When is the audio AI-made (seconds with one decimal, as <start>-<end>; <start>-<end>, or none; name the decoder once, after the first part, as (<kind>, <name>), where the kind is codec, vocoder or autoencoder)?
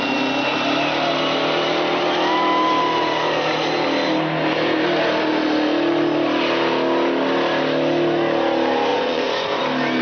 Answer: 8.9-9.6 (vocoder, Vocos)